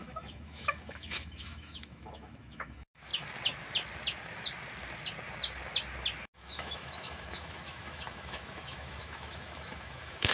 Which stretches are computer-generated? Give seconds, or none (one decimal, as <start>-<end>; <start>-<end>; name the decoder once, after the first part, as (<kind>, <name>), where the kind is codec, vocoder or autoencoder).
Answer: 0.0-3.1 (autoencoder, DAC-VAE); 6.2-10.3